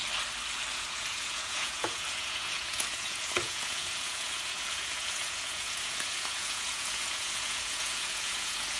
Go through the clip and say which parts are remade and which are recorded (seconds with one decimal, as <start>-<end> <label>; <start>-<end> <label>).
0.0-0.7 recorded; 0.7-8.8 remade